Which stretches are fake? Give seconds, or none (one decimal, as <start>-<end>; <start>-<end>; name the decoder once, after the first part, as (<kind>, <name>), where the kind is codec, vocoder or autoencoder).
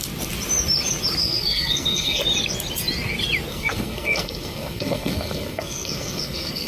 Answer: 1.2-2.2 (codec, SNAC); 3.5-6.7